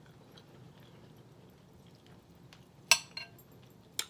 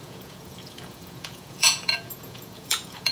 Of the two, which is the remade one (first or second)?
second